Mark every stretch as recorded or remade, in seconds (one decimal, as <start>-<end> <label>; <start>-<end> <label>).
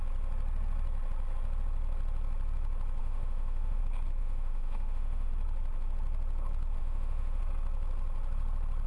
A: 0.0-3.0 recorded; 3.0-3.8 remade; 3.8-4.2 recorded; 4.2-5.3 remade; 5.3-6.8 recorded; 6.8-7.4 remade; 7.4-8.9 recorded